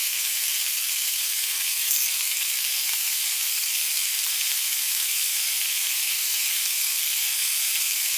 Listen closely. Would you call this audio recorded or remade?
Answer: remade